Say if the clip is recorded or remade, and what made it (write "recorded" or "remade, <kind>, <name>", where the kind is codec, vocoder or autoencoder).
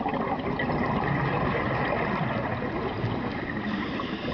recorded